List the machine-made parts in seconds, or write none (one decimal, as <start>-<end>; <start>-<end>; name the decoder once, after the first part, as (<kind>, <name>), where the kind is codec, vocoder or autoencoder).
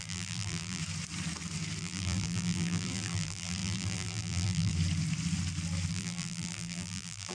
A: 0.0-0.8 (vocoder, BigVGAN v2); 1.8-4.7; 5.9-7.3